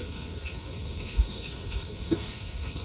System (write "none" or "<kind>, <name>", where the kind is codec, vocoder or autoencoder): codec, SNAC